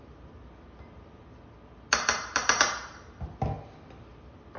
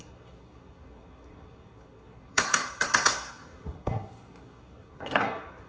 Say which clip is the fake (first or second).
second